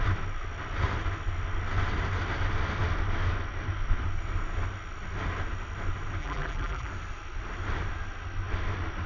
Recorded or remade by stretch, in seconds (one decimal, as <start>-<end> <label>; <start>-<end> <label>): 0.0-6.2 recorded; 6.2-6.9 remade; 6.9-9.1 recorded